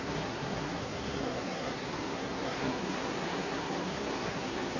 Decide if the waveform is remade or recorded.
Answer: remade